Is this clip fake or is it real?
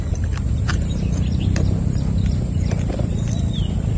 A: fake